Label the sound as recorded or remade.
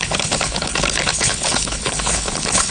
remade